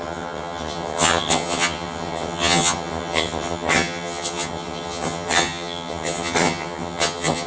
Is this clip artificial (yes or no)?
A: yes